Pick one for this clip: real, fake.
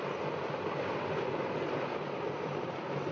real